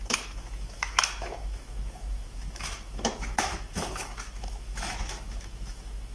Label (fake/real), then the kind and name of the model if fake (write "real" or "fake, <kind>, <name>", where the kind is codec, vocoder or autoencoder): fake, autoencoder, DAC-VAE